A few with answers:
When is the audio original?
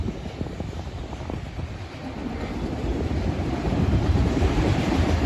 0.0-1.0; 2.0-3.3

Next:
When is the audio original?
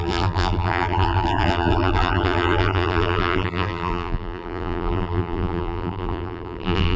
none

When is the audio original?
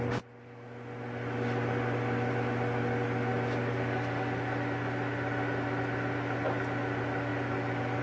0.0-7.3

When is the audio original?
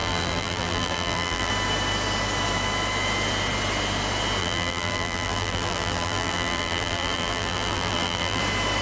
1.5-4.4; 8.4-8.8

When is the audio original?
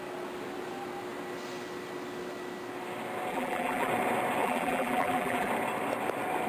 0.0-3.3; 3.9-4.4; 5.5-6.5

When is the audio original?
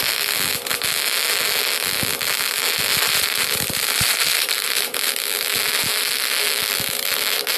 0.0-2.9; 5.1-7.6